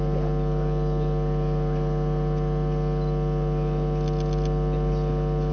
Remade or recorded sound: recorded